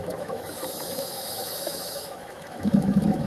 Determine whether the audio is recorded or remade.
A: remade